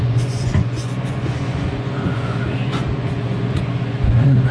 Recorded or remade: remade